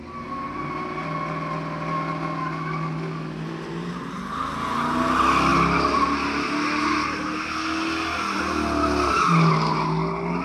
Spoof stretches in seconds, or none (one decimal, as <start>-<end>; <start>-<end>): none